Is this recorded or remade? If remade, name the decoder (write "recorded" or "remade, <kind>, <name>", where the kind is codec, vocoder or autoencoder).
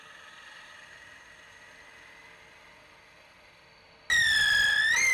recorded